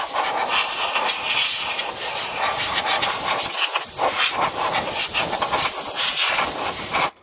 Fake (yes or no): no